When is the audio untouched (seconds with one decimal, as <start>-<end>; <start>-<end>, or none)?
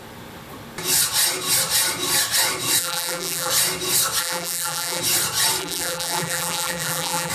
0.0-2.8; 3.5-4.2; 5.0-5.6